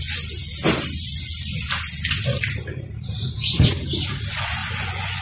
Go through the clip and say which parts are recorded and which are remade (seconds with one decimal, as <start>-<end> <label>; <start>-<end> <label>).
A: 0.0-4.6 recorded; 4.6-5.2 remade